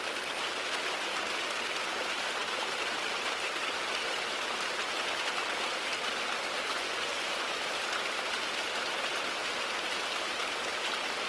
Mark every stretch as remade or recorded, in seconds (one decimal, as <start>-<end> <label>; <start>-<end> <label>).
0.0-6.7 recorded; 6.7-7.6 remade; 7.6-11.3 recorded